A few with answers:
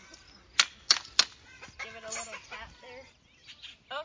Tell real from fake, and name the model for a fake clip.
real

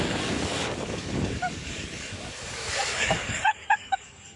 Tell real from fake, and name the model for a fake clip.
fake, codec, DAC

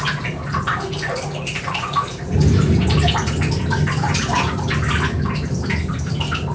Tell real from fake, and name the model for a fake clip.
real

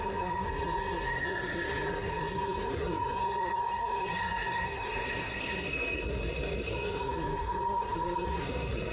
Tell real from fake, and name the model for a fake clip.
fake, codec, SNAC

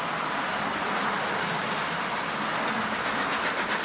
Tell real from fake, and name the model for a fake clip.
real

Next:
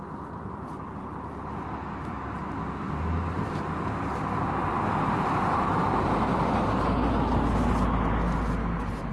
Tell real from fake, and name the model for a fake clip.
real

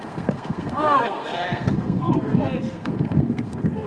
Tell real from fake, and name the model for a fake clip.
fake, codec, SNAC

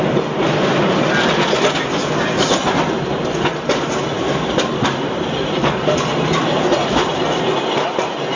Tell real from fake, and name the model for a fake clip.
real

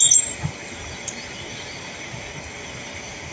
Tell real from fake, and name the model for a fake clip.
real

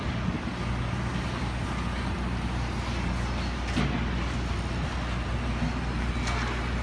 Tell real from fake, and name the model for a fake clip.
real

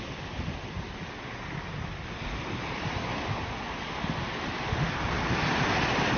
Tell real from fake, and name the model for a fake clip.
real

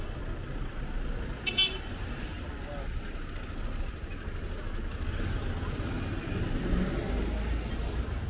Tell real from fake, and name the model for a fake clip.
real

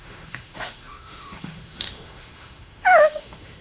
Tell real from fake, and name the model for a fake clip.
fake, autoencoder, DAC-VAE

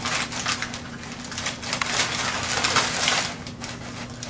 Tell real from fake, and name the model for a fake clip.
real